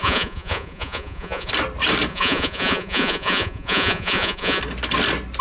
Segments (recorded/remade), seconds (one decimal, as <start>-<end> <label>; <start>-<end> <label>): 0.0-1.5 remade; 1.5-2.1 recorded; 2.1-4.6 remade; 4.6-5.4 recorded